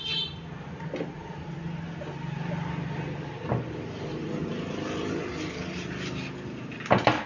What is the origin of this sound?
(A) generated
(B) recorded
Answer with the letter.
B